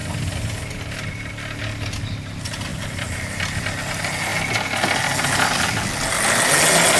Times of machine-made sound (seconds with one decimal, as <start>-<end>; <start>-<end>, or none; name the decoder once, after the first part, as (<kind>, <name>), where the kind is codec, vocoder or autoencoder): 0.0-0.7 (vocoder, BigVGAN v2); 2.7-3.6